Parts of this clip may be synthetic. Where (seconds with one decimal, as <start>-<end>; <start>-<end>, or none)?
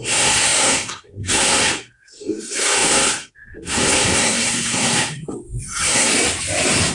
0.0-6.1